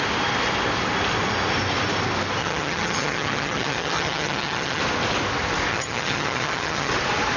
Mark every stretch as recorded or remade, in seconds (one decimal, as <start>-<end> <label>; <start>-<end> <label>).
0.0-2.4 recorded; 2.4-4.8 remade; 4.8-5.7 recorded; 5.7-6.9 remade; 6.9-7.4 recorded